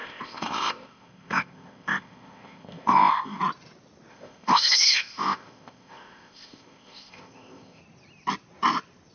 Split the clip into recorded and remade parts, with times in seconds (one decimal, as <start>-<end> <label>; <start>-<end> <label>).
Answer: 0.0-3.4 remade; 3.4-4.1 recorded; 4.1-7.8 remade; 7.8-9.1 recorded